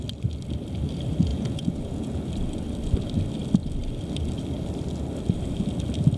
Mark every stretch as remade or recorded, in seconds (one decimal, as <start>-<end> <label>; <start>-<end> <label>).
0.0-1.3 recorded; 1.3-2.3 remade; 2.3-6.2 recorded